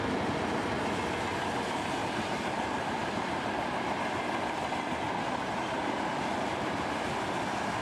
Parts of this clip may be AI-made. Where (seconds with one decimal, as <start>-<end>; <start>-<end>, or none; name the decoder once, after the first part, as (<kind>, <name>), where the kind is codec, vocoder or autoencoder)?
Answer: 2.0-3.5 (vocoder, BigVGAN v2)